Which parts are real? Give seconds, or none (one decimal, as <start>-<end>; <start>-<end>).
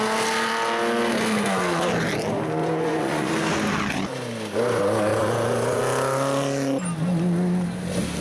0.0-2.6; 3.3-5.1; 5.8-8.2